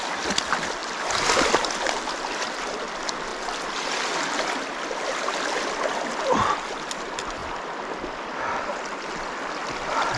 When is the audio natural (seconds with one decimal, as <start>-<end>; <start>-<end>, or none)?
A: 0.0-0.8; 1.5-7.4; 8.8-10.2